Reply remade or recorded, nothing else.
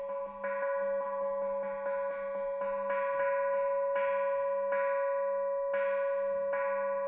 recorded